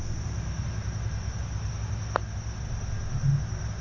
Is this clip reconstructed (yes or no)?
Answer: no